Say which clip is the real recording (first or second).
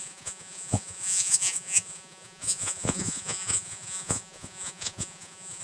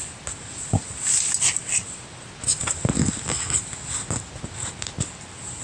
second